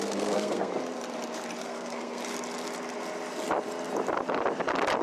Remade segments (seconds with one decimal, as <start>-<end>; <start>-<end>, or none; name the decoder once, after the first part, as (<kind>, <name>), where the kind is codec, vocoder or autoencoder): 0.0-0.7 (codec, SNAC); 1.6-2.2